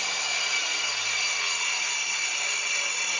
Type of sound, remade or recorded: recorded